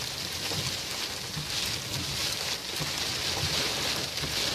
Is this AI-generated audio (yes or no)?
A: no